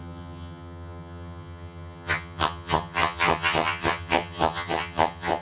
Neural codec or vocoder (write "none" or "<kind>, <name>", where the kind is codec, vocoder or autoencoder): vocoder, HiFi-GAN